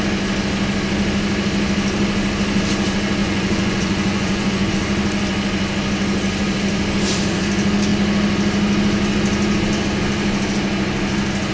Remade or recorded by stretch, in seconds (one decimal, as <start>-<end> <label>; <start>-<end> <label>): 0.0-3.2 recorded; 3.2-4.7 remade; 4.7-11.5 recorded